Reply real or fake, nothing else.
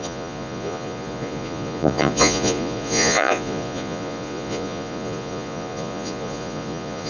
fake